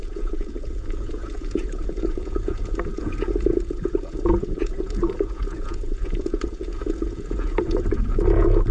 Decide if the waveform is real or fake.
fake